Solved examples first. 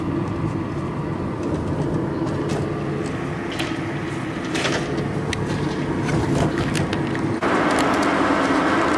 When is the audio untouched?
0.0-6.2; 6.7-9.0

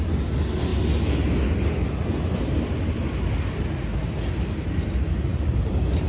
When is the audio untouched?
0.0-5.3